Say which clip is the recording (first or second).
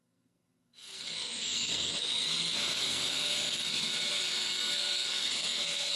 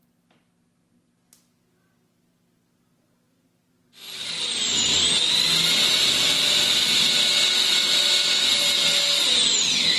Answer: second